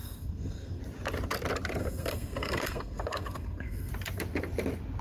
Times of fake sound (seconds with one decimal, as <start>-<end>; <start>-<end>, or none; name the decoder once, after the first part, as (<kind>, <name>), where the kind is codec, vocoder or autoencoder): 0.0-0.8 (codec, SNAC); 1.8-3.9